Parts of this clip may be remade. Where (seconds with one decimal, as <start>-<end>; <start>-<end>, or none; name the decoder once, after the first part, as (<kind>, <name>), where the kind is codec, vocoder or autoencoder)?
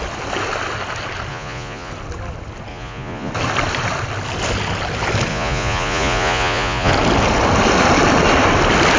1.3-1.9 (vocoder, Vocos); 2.7-3.3; 5.3-6.9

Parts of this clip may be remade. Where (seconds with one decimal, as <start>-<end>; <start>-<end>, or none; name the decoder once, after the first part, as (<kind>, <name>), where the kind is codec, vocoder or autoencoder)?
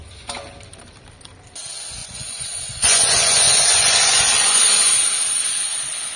2.0-4.9 (vocoder, Vocos)